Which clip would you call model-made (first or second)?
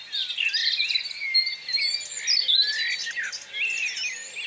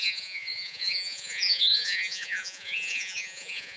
second